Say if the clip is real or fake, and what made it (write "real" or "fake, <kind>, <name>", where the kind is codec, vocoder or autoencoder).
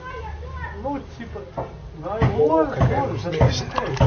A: real